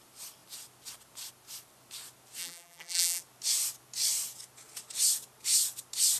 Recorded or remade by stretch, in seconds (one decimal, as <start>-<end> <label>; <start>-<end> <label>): 0.0-2.4 recorded; 2.4-3.2 remade; 3.2-6.2 recorded